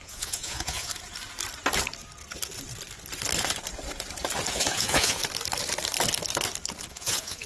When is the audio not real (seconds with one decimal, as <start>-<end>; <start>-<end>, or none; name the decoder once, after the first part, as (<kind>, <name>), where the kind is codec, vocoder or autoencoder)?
0.0-0.9 (vocoder, Vocos); 4.5-5.2; 6.9-7.5